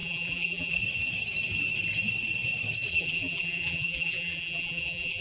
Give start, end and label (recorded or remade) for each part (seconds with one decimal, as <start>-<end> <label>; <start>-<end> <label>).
0.0-0.8 remade; 0.8-2.9 recorded; 2.9-5.2 remade